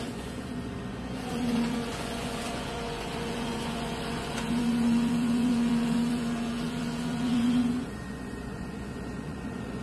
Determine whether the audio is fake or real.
fake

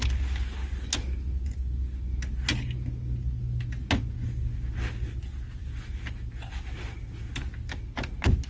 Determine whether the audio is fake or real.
real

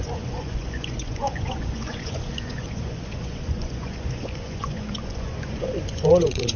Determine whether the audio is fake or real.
fake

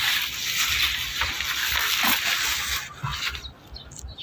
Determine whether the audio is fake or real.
real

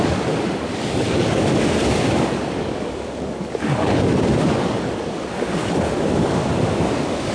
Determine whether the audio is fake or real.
fake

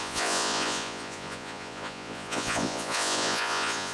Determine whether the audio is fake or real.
fake